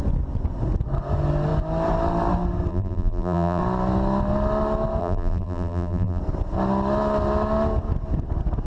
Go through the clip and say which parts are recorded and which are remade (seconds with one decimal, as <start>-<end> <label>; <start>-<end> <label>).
0.0-2.7 recorded; 2.7-3.6 remade; 3.6-5.0 recorded; 5.0-6.2 remade; 6.2-8.7 recorded

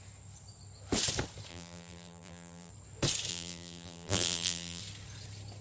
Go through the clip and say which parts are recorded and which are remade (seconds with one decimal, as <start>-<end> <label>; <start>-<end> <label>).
0.0-1.5 recorded; 1.5-2.7 remade; 2.7-3.3 recorded; 3.3-4.8 remade; 4.8-5.6 recorded